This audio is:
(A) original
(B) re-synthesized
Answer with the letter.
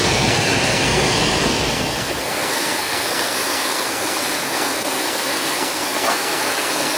B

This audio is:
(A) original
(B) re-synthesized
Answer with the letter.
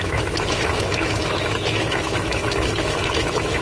B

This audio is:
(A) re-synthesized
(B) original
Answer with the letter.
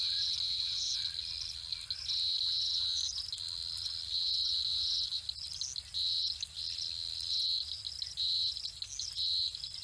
B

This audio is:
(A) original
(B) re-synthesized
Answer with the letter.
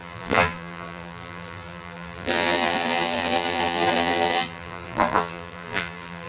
B